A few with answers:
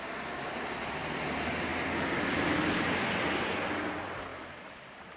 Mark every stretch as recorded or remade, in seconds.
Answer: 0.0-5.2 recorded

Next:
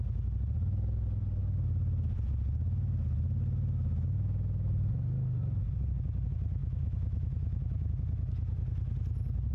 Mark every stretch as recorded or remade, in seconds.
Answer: 0.0-6.6 recorded; 6.6-7.9 remade; 7.9-9.5 recorded

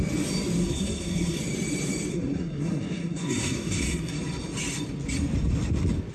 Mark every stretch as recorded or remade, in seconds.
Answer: 0.0-0.6 recorded; 0.6-1.4 remade; 1.4-2.1 recorded; 2.1-4.2 remade; 4.2-6.1 recorded

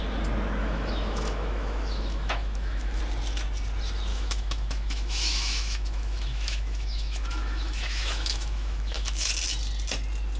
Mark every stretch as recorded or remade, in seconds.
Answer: 0.0-0.6 recorded; 0.6-3.0 remade; 3.0-4.1 recorded; 4.1-9.3 remade; 9.3-10.4 recorded

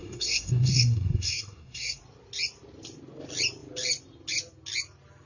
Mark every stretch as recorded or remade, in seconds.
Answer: 0.0-2.0 remade; 2.0-5.3 recorded